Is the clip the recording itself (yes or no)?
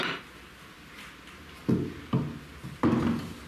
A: yes